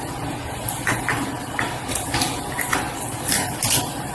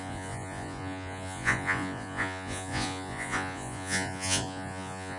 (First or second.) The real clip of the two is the first